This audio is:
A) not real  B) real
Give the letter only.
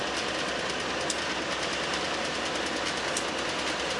B